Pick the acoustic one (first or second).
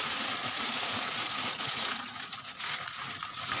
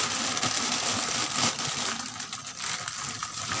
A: second